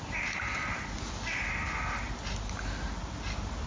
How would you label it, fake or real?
real